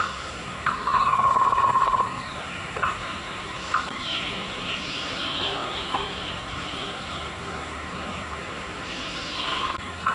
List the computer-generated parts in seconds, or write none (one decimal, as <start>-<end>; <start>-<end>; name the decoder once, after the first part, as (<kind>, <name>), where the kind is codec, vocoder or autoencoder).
0.0-10.1 (codec, SNAC)